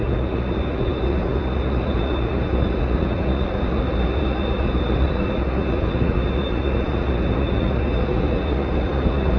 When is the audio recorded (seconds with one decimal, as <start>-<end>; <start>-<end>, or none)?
none